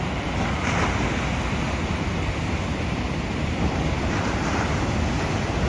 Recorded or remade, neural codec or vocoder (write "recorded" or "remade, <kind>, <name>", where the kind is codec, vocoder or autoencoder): recorded